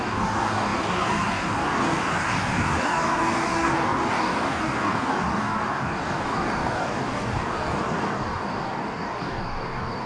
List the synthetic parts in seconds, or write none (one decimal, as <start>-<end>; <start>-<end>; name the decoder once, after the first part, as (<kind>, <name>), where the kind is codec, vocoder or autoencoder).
0.0-10.1 (codec, DAC)